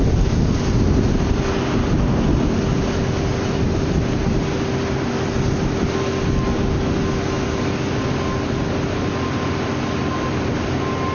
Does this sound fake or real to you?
real